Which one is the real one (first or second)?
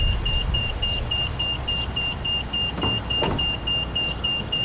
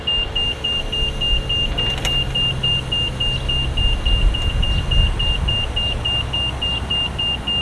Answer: second